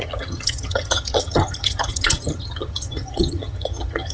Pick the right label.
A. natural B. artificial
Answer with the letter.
B